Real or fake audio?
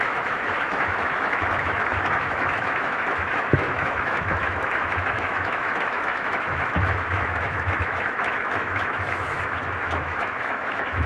fake